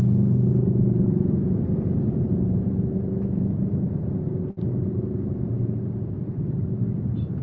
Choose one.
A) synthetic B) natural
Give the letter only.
B